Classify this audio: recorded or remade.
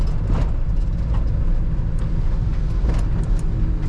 recorded